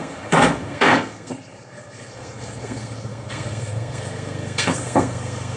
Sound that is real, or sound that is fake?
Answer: fake